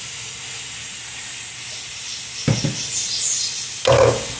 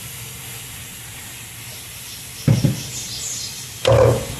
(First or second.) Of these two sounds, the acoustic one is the first